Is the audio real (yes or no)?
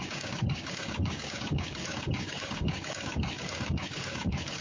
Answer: no